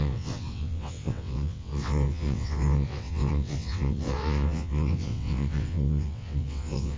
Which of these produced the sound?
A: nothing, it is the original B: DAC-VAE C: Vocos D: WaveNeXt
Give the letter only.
D